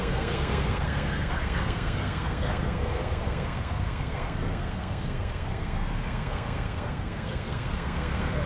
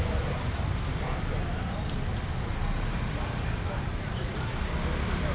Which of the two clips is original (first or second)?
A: second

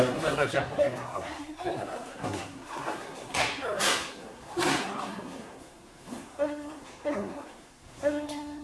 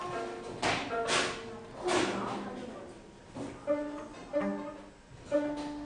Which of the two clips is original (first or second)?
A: second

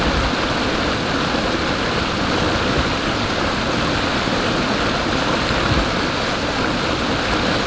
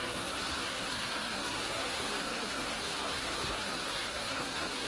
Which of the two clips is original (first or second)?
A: first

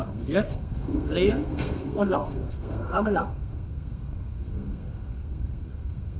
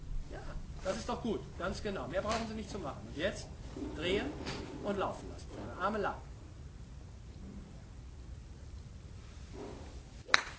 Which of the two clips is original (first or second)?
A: second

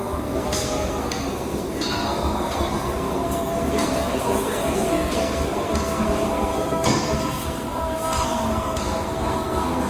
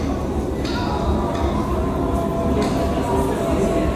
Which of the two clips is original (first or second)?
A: second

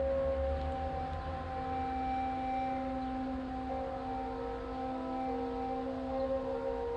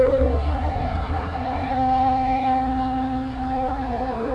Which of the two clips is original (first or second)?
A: first